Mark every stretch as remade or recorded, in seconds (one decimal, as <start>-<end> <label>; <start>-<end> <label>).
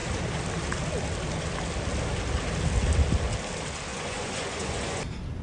0.0-3.9 recorded; 3.9-5.0 remade; 5.0-5.4 recorded